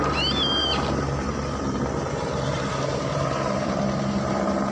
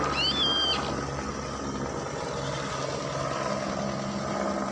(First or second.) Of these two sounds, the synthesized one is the first